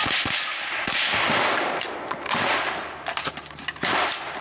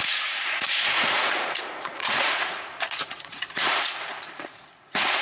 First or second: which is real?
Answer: first